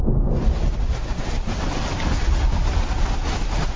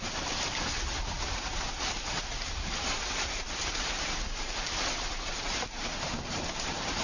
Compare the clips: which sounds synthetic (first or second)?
second